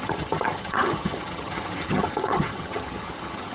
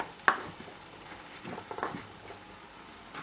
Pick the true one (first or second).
second